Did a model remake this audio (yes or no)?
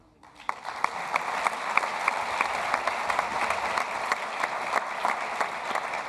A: no